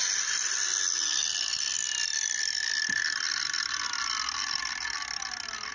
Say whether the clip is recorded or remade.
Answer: recorded